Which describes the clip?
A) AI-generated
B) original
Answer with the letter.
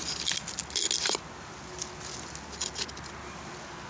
B